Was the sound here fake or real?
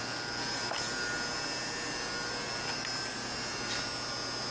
real